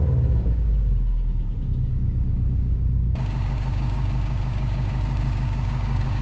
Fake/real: fake